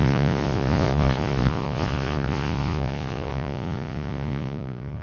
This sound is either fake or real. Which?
fake